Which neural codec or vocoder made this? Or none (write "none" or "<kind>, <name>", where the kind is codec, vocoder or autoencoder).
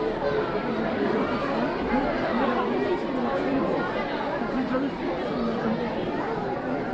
none